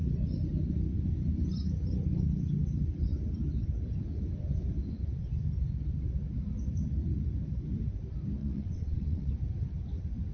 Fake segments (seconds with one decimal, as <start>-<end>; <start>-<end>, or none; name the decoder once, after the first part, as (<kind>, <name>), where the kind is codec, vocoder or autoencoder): 8.4-9.3 (vocoder, WaveNeXt)